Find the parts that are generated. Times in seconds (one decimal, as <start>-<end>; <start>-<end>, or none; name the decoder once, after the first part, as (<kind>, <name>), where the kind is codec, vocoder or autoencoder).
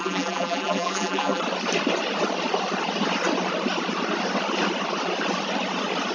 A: 0.0-1.4 (vocoder, BigVGAN v2)